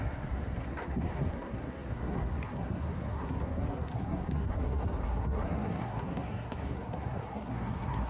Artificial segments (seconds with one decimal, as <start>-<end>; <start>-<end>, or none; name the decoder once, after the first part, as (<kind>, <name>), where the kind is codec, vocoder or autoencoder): 0.0-8.1 (codec, SNAC)